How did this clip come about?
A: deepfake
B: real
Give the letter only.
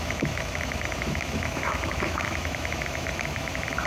A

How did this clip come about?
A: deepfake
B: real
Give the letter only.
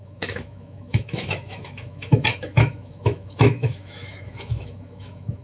A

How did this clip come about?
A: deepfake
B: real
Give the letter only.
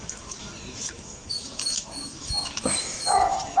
A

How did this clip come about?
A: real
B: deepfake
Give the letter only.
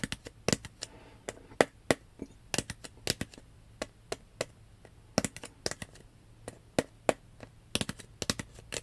A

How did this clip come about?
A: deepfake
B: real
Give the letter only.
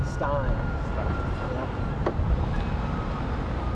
B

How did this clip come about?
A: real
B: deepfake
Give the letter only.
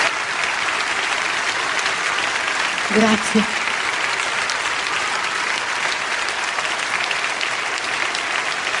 A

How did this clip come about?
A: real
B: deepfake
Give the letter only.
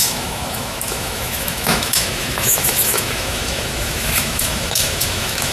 B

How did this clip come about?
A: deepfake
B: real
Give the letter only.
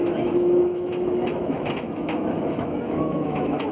A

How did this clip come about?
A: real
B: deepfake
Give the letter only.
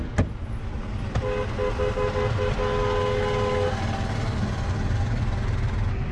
A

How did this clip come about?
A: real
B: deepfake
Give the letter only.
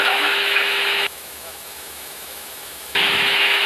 B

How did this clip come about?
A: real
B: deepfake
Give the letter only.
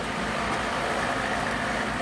A